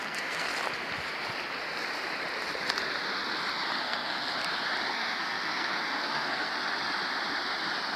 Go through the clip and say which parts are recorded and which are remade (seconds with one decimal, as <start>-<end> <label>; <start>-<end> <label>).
0.0-0.5 remade; 0.5-3.8 recorded; 3.8-4.3 remade; 4.3-4.9 recorded; 4.9-6.5 remade; 6.5-8.0 recorded